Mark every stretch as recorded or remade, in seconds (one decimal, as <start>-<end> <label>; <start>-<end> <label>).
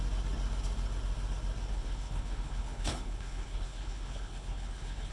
0.0-1.7 recorded; 1.7-5.1 remade